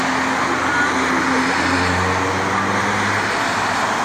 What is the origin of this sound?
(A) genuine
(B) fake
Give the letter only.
A